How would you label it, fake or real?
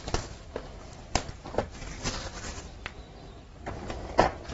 real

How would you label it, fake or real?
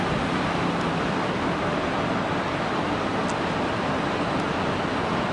real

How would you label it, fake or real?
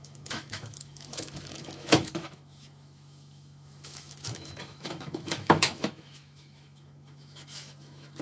fake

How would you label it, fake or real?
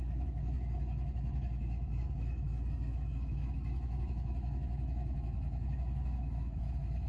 fake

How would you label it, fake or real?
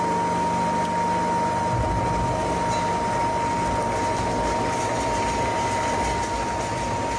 real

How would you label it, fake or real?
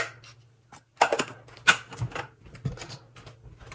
real